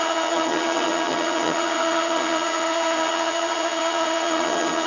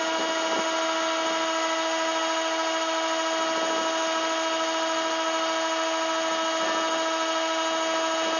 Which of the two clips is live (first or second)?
second